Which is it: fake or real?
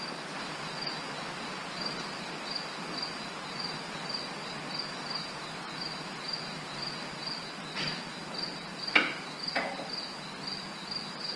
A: real